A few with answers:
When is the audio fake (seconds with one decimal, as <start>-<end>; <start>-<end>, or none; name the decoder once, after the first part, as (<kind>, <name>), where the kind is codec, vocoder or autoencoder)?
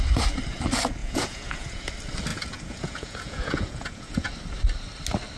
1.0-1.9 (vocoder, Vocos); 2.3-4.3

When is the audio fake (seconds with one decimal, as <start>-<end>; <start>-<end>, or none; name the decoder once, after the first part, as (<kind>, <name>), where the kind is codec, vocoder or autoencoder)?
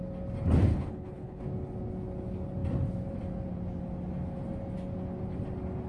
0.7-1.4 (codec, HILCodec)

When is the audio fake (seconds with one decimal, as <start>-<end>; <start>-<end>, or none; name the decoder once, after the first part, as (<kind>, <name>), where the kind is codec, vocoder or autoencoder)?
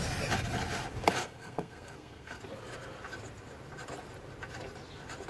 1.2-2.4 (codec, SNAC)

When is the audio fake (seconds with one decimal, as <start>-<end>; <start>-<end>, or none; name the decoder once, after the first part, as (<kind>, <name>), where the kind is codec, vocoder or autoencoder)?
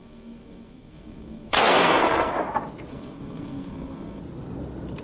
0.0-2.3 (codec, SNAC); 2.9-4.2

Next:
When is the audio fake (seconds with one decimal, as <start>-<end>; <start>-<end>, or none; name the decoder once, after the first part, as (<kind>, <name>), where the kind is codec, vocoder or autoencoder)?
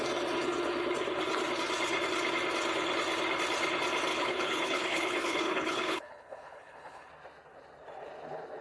4.1-7.1 (codec, HILCodec)